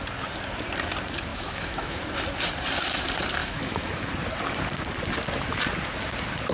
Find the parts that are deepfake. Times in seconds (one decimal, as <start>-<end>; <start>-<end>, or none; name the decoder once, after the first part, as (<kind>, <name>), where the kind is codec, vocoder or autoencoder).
1.3-2.0 (autoencoder, DAC-VAE); 3.4-4.1